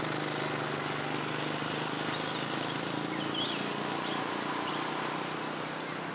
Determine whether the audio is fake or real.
real